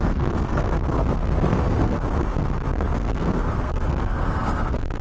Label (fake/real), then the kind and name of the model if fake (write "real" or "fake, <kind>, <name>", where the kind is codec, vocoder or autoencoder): fake, codec, SNAC